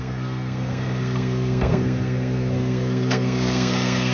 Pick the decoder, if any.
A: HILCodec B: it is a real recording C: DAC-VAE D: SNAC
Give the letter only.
D